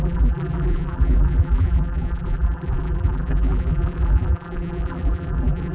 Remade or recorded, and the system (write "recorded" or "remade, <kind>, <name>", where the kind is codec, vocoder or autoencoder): remade, vocoder, BigVGAN v2